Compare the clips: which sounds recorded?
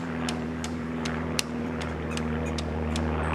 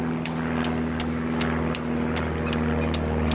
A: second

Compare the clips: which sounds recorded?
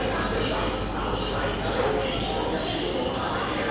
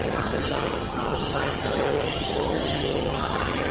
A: first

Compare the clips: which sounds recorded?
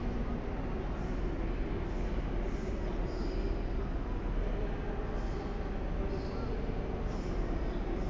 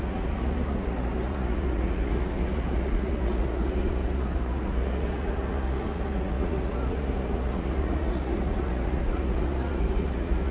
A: first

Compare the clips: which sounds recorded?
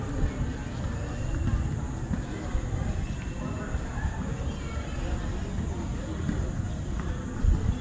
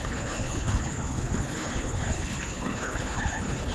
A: first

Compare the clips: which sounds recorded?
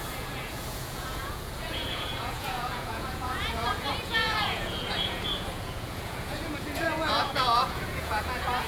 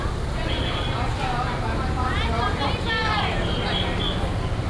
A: second